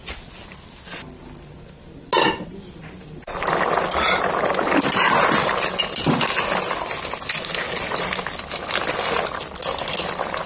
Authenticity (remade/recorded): recorded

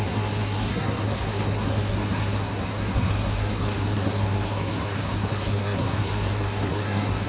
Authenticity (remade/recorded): remade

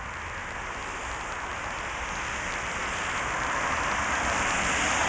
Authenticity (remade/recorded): recorded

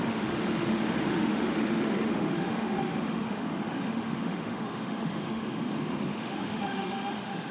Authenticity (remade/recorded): remade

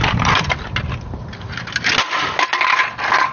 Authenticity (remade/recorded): recorded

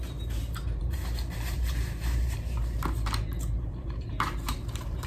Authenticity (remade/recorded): remade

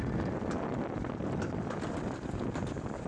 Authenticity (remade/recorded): recorded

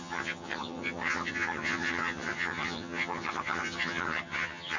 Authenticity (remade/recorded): remade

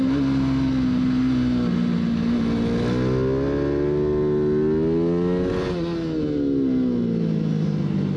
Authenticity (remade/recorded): recorded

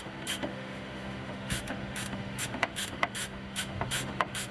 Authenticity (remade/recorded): remade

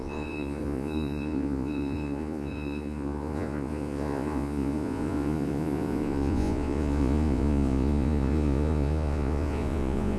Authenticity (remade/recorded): remade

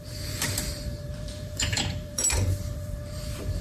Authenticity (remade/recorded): remade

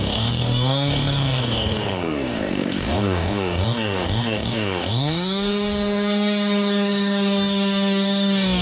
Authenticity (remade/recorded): remade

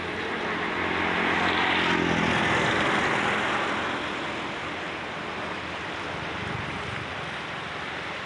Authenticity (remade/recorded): recorded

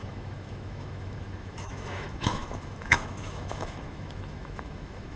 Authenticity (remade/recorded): remade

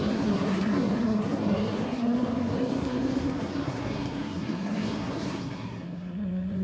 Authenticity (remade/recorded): remade